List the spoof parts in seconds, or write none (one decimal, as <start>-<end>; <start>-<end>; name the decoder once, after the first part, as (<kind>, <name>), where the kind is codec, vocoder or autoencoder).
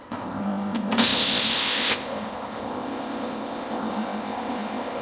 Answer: 0.0-5.0 (codec, ZipCodec)